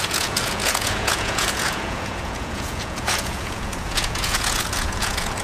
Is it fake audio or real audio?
fake